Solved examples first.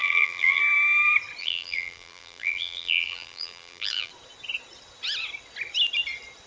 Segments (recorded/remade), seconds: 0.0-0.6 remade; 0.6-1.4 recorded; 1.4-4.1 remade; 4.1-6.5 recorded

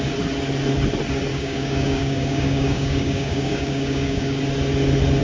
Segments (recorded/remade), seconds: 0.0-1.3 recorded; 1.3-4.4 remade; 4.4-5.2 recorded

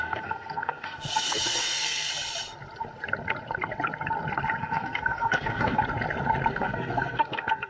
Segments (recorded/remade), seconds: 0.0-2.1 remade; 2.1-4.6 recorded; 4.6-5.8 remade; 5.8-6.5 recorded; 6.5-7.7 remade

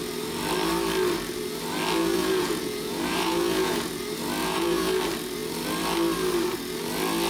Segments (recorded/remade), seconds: 0.0-2.0 recorded; 2.0-3.9 remade; 3.9-4.4 recorded; 4.4-5.0 remade; 5.0-7.3 recorded